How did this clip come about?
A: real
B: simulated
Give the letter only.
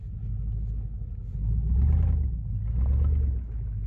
A